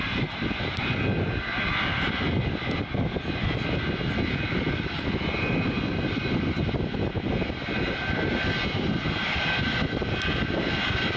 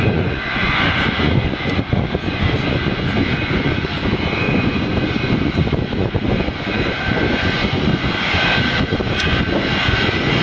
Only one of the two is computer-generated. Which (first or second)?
second